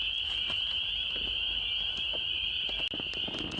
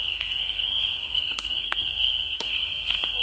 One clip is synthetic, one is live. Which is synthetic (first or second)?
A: second